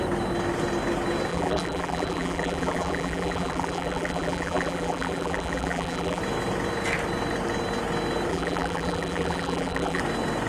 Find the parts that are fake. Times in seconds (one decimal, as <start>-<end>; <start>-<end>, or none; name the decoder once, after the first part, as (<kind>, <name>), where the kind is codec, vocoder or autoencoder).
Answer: 1.3-6.2 (vocoder, BigVGAN v2); 8.3-10.0